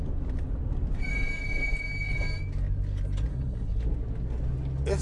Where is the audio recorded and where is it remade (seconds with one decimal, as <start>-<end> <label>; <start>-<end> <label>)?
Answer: 0.0-3.3 recorded; 3.3-3.8 remade; 3.8-5.0 recorded